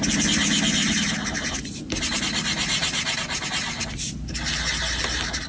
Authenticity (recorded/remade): recorded